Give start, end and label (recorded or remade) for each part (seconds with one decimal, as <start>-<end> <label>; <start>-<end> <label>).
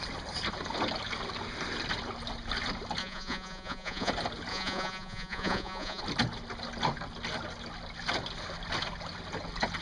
0.0-3.0 recorded; 3.0-4.1 remade; 4.1-4.5 recorded; 4.5-6.0 remade; 6.0-9.8 recorded